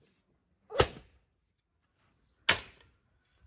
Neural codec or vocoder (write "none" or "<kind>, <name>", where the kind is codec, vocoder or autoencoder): none